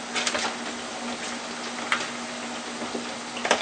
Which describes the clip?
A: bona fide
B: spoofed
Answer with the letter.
A